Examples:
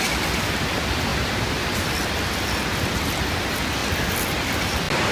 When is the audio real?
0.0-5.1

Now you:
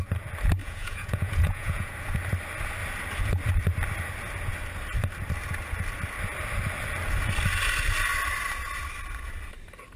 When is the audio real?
0.0-0.6; 1.9-10.0

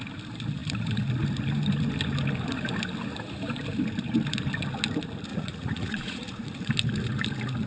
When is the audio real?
0.0-5.3; 6.7-7.7